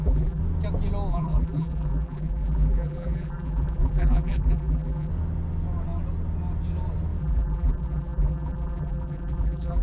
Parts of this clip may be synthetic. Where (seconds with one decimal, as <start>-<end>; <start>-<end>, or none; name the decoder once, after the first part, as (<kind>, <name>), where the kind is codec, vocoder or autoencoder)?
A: 0.0-0.4 (vocoder, BigVGAN v2); 1.1-5.1; 7.2-9.8